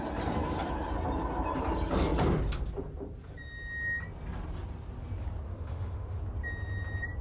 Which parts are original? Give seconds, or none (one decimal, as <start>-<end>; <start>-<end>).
0.0-5.5; 6.2-7.2